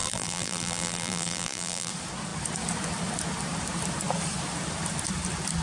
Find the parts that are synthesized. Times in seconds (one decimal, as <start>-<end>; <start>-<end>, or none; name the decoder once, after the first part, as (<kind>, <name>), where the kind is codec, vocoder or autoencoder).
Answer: 0.0-1.9 (vocoder, BigVGAN v2)